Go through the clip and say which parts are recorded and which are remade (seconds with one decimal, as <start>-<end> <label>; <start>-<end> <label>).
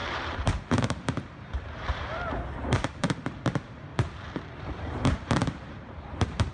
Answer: 0.0-3.9 remade; 3.9-4.5 recorded; 4.5-6.5 remade